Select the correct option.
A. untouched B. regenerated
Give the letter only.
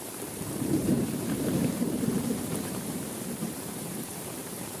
B